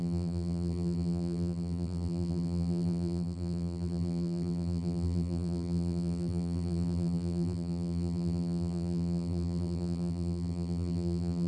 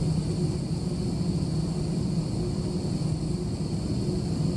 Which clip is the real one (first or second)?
second